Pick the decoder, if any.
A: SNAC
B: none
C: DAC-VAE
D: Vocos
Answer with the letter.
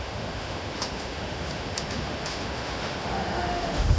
C